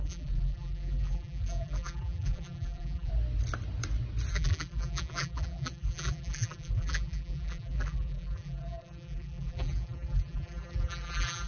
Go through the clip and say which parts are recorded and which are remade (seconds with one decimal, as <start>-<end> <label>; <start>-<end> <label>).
0.0-3.1 remade; 3.1-4.3 recorded; 4.3-11.5 remade

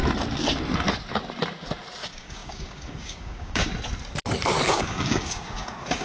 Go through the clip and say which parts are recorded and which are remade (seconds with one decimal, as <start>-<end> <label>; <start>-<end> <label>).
0.0-2.0 recorded; 2.0-3.7 remade; 3.7-4.7 recorded; 4.7-6.0 remade

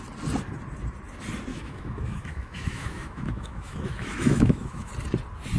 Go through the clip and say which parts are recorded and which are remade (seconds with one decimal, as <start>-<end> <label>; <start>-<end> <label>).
0.0-1.5 recorded; 1.5-4.9 remade; 4.9-5.6 recorded

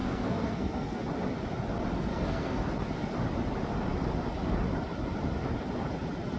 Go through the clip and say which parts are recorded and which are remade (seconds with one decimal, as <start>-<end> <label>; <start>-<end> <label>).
0.0-1.0 remade; 1.0-2.1 recorded; 2.1-2.6 remade; 2.6-6.4 recorded

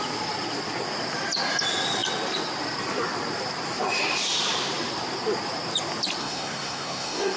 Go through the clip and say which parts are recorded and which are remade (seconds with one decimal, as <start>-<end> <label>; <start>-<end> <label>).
0.0-6.2 recorded; 6.2-7.4 remade

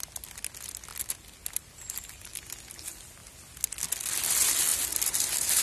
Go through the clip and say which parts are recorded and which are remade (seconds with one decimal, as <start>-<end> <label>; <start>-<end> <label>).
0.0-5.6 recorded

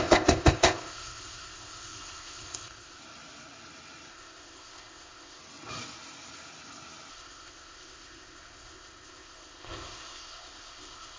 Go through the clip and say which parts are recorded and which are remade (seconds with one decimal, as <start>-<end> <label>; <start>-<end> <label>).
0.0-3.0 remade; 3.0-4.1 recorded; 4.1-5.4 remade; 5.4-7.1 recorded; 7.1-11.2 remade

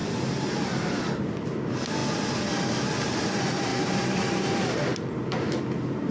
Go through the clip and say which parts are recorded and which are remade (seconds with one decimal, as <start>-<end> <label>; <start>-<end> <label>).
0.0-1.0 remade; 1.0-3.7 recorded; 3.7-4.8 remade; 4.8-6.1 recorded